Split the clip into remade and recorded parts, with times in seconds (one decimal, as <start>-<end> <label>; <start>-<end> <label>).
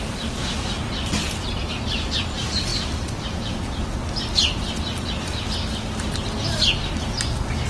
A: 0.0-7.7 recorded